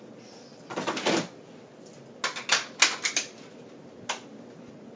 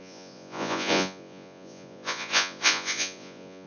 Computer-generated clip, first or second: second